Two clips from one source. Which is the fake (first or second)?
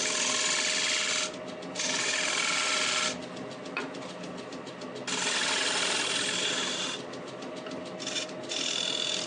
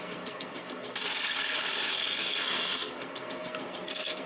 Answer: second